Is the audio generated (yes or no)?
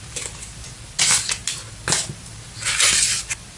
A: no